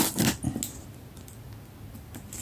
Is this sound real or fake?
real